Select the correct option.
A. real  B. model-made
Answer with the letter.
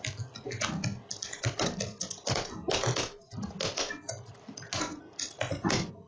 A